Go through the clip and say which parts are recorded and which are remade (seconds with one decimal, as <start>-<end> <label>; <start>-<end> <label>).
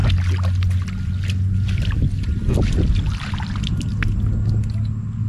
0.0-5.3 recorded